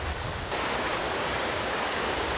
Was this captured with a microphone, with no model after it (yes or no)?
no